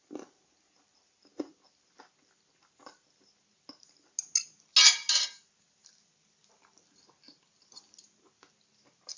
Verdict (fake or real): real